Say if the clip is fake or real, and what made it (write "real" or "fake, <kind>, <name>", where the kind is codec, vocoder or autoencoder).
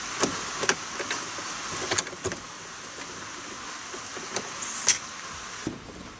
real